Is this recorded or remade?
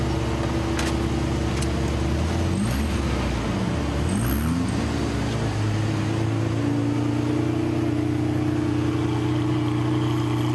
recorded